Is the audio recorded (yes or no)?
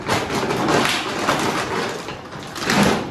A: no